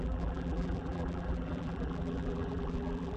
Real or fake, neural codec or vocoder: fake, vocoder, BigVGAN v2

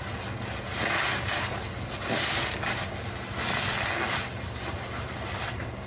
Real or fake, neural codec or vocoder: real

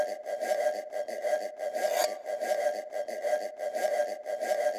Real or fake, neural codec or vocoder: fake, vocoder, BigVGAN v2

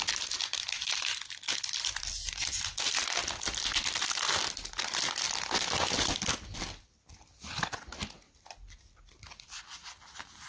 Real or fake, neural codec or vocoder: fake, vocoder, BigVGAN v2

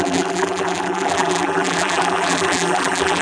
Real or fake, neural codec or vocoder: fake, vocoder, BigVGAN v2